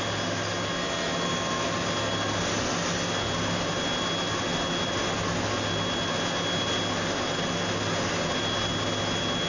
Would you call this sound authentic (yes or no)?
yes